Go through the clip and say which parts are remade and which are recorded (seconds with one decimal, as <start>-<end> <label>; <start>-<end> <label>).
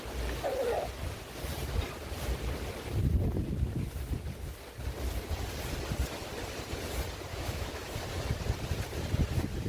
0.0-7.3 recorded; 7.3-8.0 remade; 8.0-9.7 recorded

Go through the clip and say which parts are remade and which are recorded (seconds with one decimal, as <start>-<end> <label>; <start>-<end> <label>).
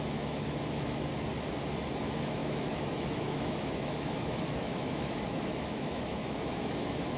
0.0-1.1 remade; 1.1-2.0 recorded; 2.0-7.2 remade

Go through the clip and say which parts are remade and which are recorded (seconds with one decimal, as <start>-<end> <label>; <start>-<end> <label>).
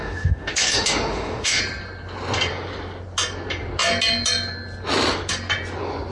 0.0-1.6 remade; 1.6-6.1 recorded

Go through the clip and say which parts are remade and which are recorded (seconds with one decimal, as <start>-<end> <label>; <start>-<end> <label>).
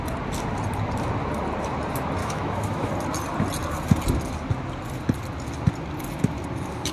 0.0-2.2 recorded; 2.2-2.9 remade; 2.9-6.9 recorded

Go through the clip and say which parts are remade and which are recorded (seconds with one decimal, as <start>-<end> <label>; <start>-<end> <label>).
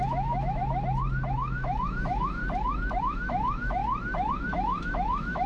0.0-0.6 remade; 0.6-1.3 recorded; 1.3-2.4 remade; 2.4-3.0 recorded; 3.0-3.8 remade; 3.8-4.3 recorded; 4.3-5.5 remade